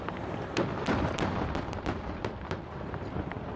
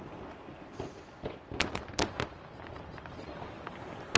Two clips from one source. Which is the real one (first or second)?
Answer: second